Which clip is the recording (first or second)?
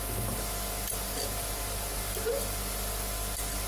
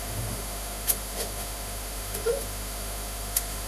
first